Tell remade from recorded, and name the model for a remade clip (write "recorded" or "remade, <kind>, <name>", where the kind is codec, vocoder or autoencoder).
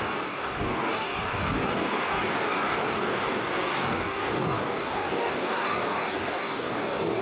remade, codec, DAC